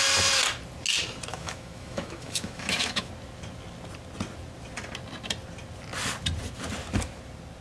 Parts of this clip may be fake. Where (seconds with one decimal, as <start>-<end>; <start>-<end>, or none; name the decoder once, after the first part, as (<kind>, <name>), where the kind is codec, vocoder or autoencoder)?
1.3-3.1 (autoencoder, DAC-VAE)